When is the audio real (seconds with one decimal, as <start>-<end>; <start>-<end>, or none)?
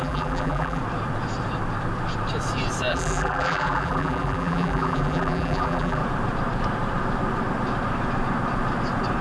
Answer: 0.8-2.9; 6.0-9.2